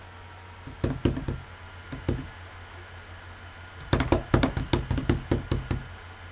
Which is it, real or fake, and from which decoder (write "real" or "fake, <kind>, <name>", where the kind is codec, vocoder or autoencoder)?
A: real